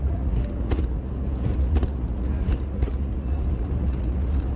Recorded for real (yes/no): no